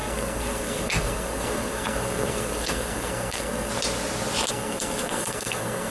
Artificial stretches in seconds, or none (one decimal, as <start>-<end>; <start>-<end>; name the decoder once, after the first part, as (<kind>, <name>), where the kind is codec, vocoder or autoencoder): 0.0-3.7 (codec, SNAC); 4.5-5.9